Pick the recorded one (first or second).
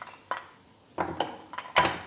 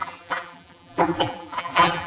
first